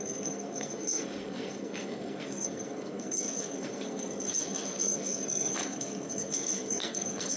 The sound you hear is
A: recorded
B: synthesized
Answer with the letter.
B